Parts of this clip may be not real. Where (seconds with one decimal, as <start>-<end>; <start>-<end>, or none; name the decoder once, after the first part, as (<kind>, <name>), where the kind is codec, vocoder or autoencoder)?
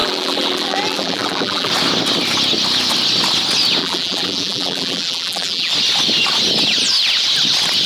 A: 0.0-1.7 (vocoder, BigVGAN v2); 3.8-5.7